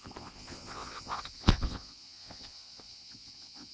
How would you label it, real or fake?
fake